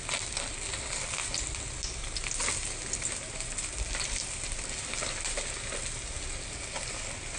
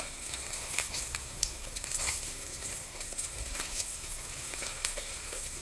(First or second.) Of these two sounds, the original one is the first